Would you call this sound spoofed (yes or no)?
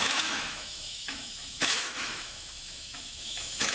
yes